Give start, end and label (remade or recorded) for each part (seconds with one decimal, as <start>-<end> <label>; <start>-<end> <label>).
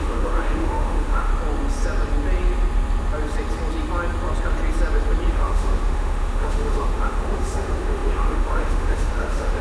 0.0-1.3 remade; 1.3-5.3 recorded; 5.3-9.6 remade